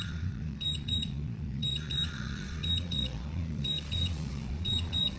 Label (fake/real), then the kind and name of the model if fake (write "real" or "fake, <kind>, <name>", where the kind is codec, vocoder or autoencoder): fake, vocoder, Vocos